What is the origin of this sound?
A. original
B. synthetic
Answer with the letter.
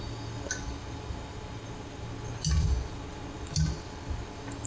A